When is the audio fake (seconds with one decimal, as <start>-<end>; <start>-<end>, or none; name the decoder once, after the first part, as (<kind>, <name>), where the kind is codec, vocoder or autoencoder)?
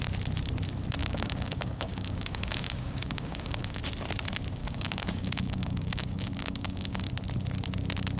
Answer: 1.0-3.8 (codec, DAC); 4.6-7.1